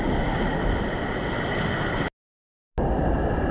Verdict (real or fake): real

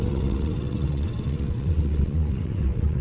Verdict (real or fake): fake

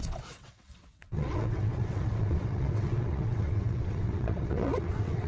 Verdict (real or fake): fake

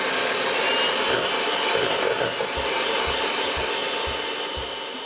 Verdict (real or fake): real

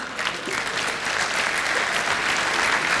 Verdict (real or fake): real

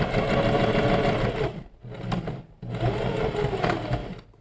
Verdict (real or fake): real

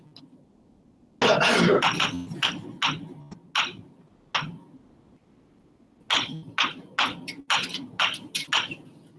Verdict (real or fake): real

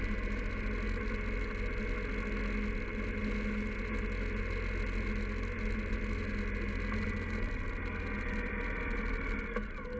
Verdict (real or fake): real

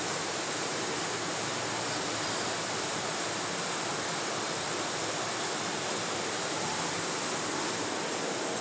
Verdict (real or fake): real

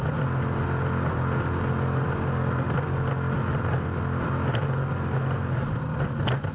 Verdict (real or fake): real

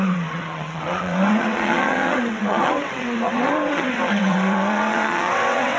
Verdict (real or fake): fake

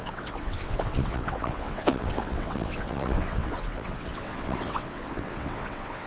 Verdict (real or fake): fake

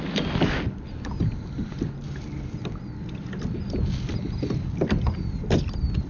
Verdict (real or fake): real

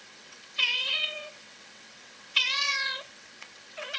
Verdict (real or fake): fake